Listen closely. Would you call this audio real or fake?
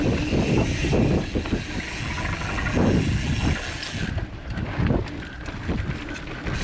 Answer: real